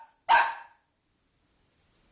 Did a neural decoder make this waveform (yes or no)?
no